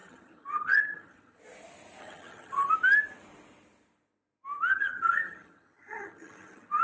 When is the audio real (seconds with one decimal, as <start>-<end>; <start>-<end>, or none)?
1.4-2.0; 2.7-4.7